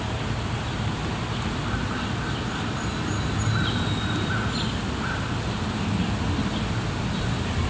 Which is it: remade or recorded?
recorded